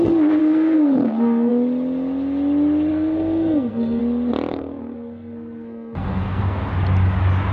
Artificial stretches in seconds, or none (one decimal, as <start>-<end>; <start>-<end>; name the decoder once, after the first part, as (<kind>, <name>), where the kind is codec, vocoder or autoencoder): 0.4-1.5 (codec, SNAC); 2.9-4.0; 4.5-6.7